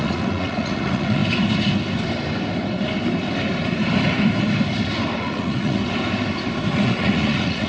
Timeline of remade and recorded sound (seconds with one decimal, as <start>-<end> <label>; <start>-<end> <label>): 0.0-1.2 remade; 1.2-5.2 recorded; 5.2-5.8 remade; 5.8-6.7 recorded; 6.7-7.7 remade